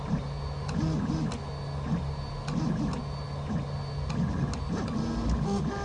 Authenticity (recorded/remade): recorded